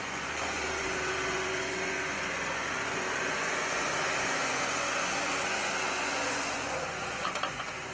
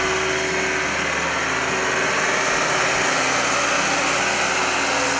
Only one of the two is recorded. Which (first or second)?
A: second